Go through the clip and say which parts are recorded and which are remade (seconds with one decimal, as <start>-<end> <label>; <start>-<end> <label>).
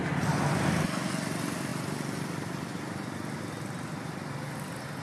0.0-5.0 recorded